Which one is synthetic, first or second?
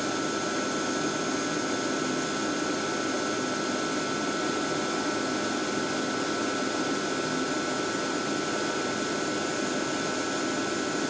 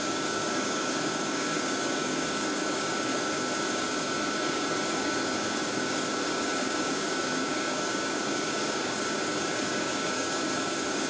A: second